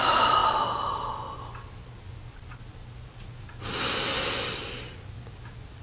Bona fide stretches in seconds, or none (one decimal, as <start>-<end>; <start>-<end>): 0.0-5.8

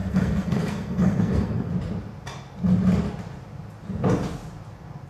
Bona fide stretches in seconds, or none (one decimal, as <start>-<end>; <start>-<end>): 1.7-5.1

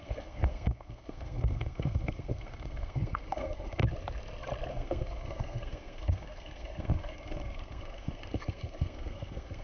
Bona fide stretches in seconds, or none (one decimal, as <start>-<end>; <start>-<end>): 3.8-4.7

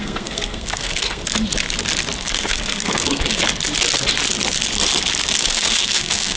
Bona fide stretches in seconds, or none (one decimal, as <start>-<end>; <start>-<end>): 1.2-2.2; 3.4-5.4

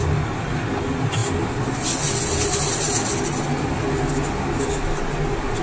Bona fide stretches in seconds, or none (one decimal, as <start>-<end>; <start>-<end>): 0.0-5.6